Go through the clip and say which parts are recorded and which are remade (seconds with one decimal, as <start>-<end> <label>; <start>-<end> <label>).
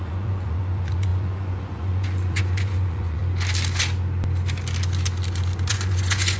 0.0-3.2 remade; 3.2-5.7 recorded; 5.7-6.4 remade